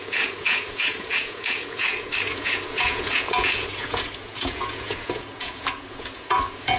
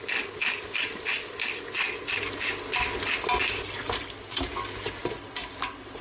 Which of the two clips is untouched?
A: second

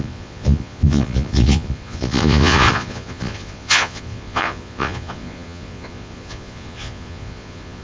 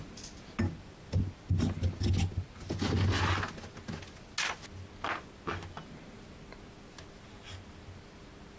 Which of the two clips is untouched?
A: second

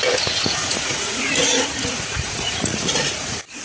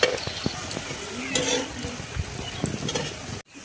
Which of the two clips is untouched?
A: second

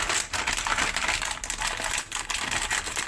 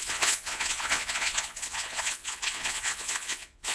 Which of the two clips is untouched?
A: first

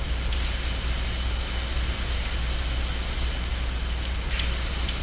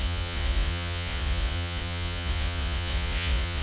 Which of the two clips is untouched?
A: first